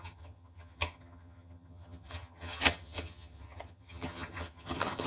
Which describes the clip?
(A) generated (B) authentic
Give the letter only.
A